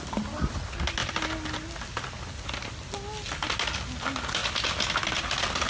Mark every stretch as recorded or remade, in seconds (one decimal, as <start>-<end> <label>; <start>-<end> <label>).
0.0-5.7 recorded